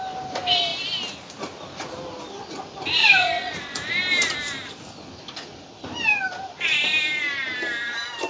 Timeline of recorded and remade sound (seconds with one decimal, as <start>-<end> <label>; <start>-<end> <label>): 0.0-3.0 recorded; 3.0-3.9 remade; 3.9-8.3 recorded